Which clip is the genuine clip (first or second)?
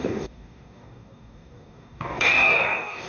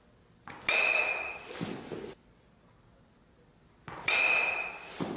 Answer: second